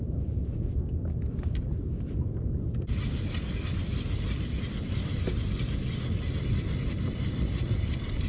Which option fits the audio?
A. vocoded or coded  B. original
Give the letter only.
B